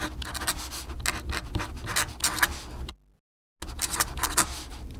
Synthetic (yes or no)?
no